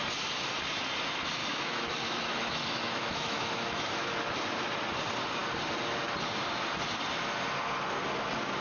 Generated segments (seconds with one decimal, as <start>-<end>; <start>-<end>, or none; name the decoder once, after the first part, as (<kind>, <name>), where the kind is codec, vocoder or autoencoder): 1.4-4.1 (autoencoder, DAC-VAE)